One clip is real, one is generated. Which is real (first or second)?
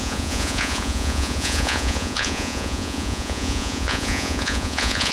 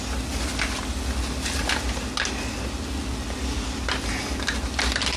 second